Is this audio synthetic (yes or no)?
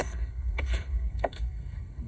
yes